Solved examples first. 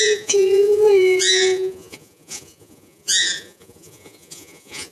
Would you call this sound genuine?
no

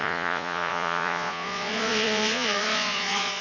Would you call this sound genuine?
no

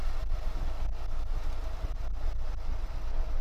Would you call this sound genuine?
yes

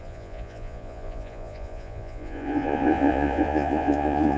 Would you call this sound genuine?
no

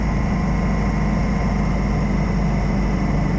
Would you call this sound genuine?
yes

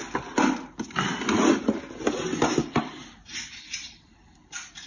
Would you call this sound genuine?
yes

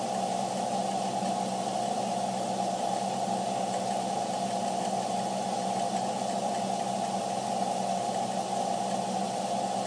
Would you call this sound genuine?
yes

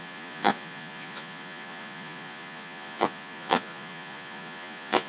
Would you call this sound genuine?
no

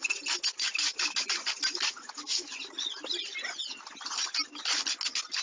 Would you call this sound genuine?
yes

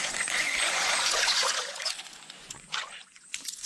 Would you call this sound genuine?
no